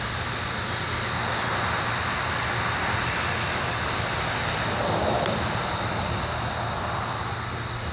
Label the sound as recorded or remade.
recorded